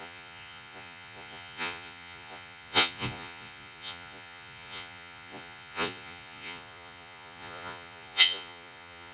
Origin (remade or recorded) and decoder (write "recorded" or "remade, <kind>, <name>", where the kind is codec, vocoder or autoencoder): remade, vocoder, Vocos